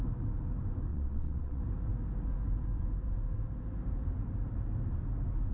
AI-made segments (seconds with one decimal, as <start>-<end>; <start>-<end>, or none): 0.9-1.6

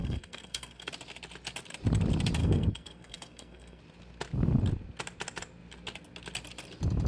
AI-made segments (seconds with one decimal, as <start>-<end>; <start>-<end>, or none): 0.0-0.9; 2.4-3.8

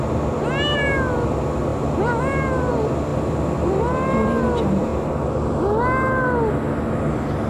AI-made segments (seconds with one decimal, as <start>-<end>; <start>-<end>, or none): none

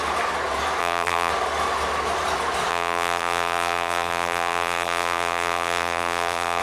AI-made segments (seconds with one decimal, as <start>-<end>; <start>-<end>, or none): 0.8-1.3; 2.7-6.6

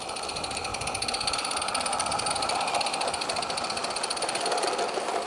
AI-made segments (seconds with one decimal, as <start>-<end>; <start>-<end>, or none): none